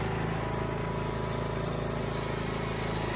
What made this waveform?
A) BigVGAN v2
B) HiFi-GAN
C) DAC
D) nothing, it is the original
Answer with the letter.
D